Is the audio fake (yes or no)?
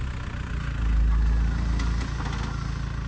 no